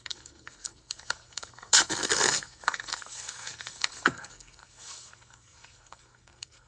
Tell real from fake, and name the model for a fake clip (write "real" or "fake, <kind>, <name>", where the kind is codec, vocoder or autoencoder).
fake, codec, SNAC